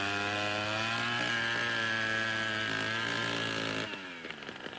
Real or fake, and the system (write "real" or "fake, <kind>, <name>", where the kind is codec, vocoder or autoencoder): real